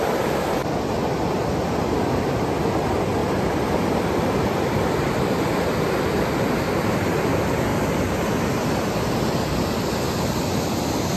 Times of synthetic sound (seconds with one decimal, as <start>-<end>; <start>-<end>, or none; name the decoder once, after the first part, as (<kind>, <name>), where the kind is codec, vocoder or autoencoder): none